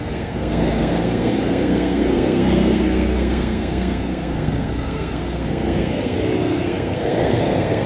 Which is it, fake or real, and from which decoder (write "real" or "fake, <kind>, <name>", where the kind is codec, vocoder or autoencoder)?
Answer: fake, codec, SNAC